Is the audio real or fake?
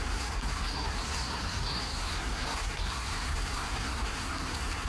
fake